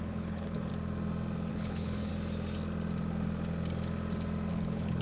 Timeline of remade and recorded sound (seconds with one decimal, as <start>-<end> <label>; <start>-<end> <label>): 0.0-0.7 remade; 0.7-1.5 recorded; 1.5-2.1 remade; 2.1-4.5 recorded; 4.5-5.0 remade